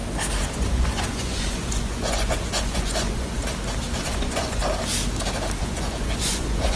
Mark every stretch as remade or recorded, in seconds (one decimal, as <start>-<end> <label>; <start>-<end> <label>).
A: 0.0-0.5 recorded; 0.5-3.4 remade; 3.4-4.0 recorded; 4.0-4.6 remade; 4.6-5.6 recorded; 5.6-6.8 remade